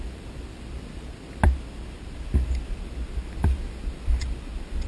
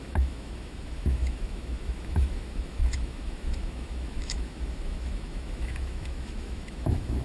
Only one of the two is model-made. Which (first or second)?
second